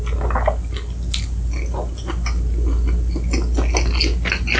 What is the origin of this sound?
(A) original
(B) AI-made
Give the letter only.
A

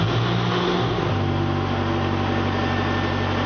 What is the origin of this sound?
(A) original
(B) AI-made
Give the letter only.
A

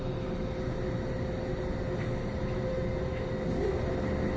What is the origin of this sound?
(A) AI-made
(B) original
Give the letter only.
B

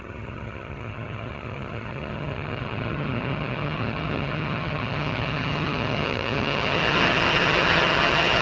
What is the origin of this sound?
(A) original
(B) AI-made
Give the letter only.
B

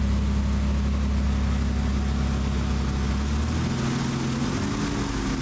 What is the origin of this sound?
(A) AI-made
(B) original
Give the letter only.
B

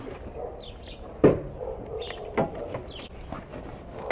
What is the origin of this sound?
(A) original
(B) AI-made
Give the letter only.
A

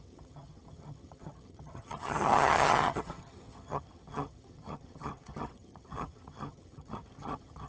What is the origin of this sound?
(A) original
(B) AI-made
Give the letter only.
B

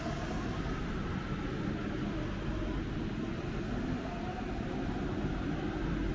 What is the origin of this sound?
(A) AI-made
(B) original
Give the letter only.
B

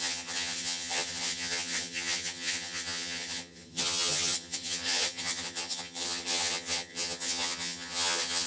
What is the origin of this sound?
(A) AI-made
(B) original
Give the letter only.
A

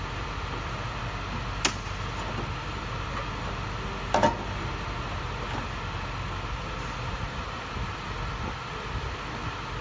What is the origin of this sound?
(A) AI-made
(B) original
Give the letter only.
B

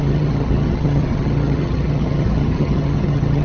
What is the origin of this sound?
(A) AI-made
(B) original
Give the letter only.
A